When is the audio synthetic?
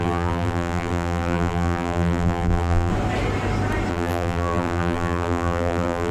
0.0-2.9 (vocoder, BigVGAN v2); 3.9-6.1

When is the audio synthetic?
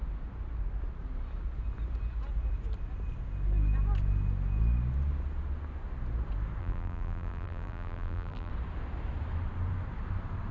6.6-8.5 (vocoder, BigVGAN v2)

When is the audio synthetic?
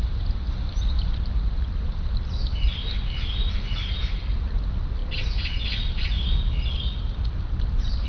none